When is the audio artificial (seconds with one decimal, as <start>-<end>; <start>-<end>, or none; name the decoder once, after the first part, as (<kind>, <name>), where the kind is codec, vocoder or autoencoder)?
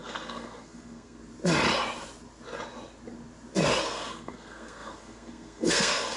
0.0-1.2 (codec, SNAC); 3.8-6.2